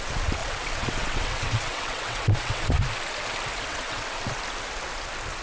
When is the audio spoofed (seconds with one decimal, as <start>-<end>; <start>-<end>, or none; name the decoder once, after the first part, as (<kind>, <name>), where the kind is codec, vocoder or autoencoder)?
0.4-2.7 (vocoder, WaveNeXt); 3.7-4.2